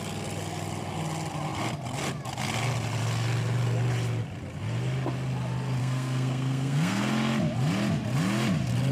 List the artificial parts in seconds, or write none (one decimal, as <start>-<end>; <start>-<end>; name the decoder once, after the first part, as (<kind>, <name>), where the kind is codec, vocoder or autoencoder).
5.8-7.1 (codec, SNAC)